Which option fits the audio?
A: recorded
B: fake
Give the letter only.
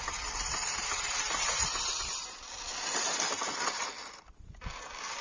A